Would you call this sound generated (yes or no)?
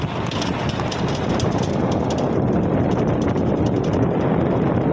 no